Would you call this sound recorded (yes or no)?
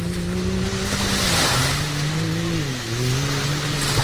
yes